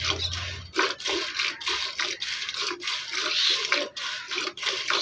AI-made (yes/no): no